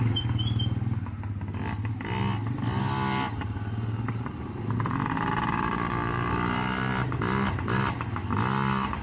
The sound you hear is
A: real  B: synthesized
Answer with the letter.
A